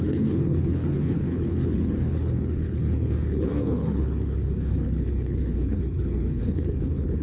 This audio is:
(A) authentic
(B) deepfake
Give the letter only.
B